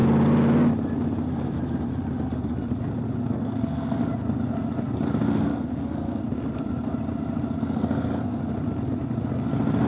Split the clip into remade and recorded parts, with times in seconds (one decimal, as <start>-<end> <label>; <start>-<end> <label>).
0.0-3.4 recorded; 3.4-4.0 remade; 4.0-5.4 recorded; 5.4-6.2 remade; 6.2-7.6 recorded; 7.6-8.4 remade; 8.4-9.9 recorded